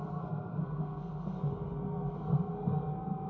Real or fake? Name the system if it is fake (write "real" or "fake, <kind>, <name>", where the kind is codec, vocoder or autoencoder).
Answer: fake, codec, SNAC